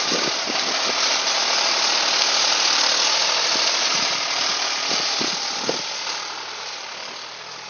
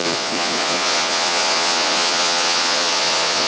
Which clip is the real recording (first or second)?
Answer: first